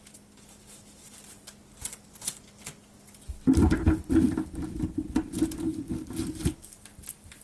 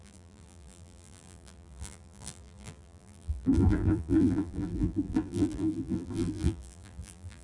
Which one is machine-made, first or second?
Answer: second